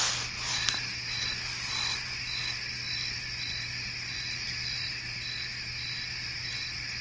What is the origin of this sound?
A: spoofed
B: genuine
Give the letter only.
B